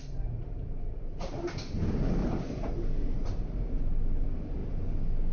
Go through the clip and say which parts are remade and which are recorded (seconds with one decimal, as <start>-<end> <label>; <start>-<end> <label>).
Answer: 0.0-2.2 recorded; 2.2-3.7 remade; 3.7-5.3 recorded